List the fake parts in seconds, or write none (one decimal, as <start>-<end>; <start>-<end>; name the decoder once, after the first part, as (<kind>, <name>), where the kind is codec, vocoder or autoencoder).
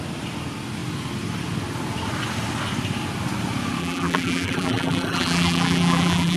3.8-6.4 (vocoder, BigVGAN v2)